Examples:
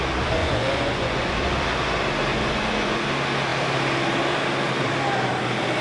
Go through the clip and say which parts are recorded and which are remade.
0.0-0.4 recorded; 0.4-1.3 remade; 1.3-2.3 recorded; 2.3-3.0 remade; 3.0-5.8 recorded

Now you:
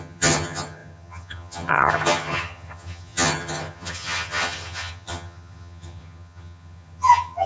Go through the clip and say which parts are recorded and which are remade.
0.0-7.5 remade

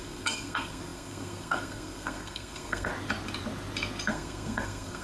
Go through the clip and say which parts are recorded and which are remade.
0.0-2.9 remade; 2.9-4.1 recorded; 4.1-5.0 remade